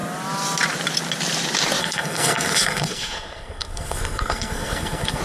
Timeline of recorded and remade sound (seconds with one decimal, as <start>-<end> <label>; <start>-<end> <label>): 0.0-1.8 recorded; 1.8-5.2 remade